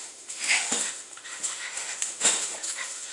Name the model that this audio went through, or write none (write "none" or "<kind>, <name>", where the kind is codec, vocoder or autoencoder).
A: autoencoder, DAC-VAE